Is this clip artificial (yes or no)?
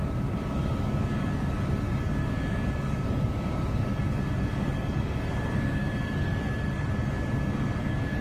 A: yes